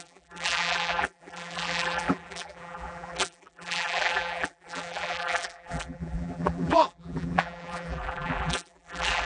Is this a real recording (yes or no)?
no